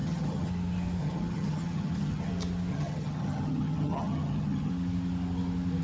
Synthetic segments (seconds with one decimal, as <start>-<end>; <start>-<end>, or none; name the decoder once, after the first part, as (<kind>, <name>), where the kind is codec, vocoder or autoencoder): 0.0-0.5 (vocoder, HiFi-GAN); 1.0-2.3; 2.7-4.7